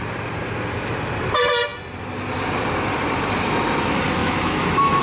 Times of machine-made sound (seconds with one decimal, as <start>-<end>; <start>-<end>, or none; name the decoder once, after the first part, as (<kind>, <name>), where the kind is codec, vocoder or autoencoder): 4.2-5.0 (autoencoder, DAC-VAE)